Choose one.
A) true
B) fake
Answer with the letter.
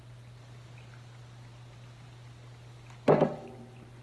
A